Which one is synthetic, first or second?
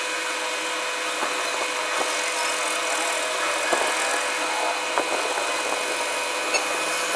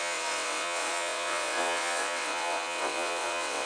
second